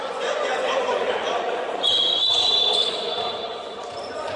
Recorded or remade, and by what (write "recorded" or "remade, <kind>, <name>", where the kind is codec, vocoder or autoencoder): remade, vocoder, Vocos